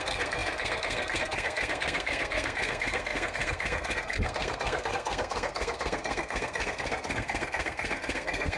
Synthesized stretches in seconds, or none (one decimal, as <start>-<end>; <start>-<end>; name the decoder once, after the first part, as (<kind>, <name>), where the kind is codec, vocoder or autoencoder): 0.0-8.6 (codec, SNAC)